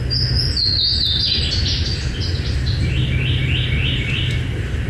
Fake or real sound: real